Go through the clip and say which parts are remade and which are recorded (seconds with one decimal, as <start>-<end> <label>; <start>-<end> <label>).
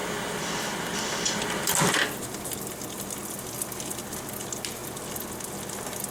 0.0-6.1 recorded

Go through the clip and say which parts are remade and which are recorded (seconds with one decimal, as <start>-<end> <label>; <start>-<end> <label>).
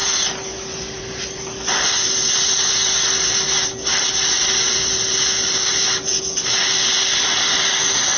0.0-8.2 recorded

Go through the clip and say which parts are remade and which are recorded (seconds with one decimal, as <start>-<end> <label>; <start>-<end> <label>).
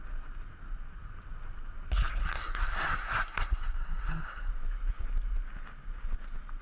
0.0-2.2 recorded; 2.2-4.5 remade; 4.5-6.6 recorded